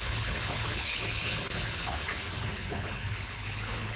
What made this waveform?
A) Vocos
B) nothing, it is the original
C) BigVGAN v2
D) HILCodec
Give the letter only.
D